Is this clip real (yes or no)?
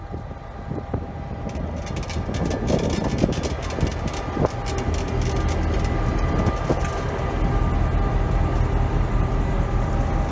yes